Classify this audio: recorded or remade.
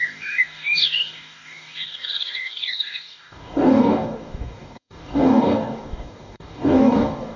remade